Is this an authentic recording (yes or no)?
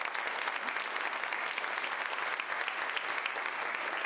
yes